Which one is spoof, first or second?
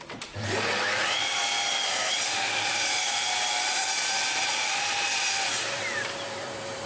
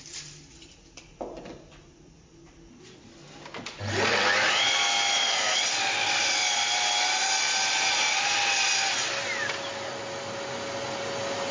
first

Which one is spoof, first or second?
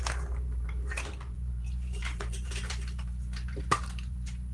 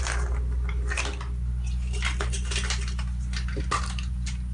first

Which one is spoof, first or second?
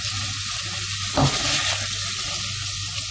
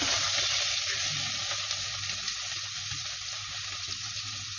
second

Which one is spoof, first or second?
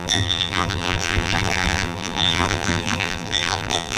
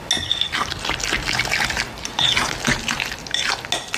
first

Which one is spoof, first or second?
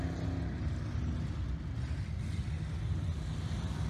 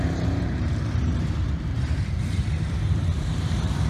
second